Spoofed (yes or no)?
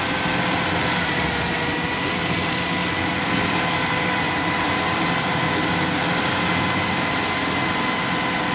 no